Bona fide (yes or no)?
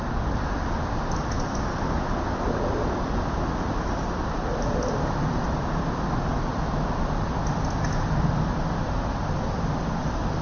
yes